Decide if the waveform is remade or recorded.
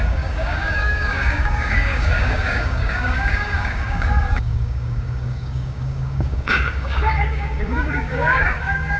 remade